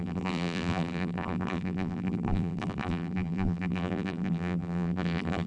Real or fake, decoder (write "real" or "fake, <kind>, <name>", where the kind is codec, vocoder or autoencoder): fake, vocoder, BigVGAN v2